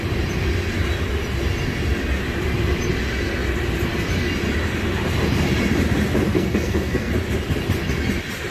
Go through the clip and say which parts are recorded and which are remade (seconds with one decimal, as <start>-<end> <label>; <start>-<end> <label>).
0.0-6.3 recorded; 6.3-7.1 remade; 7.1-8.5 recorded